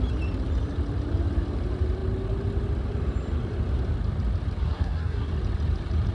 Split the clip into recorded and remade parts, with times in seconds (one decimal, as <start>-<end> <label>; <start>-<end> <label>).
0.0-4.6 recorded; 4.6-5.3 remade; 5.3-6.1 recorded